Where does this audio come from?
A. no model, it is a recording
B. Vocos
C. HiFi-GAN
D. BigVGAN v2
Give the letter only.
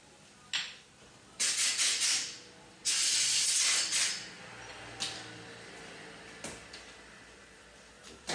A